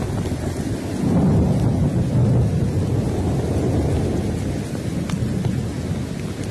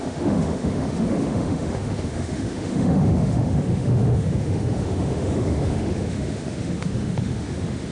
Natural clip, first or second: first